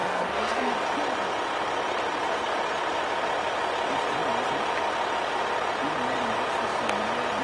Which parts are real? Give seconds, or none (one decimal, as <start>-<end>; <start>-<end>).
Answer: 0.7-7.4